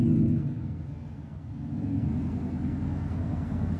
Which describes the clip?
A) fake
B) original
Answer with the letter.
A